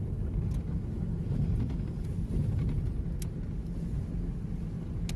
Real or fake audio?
real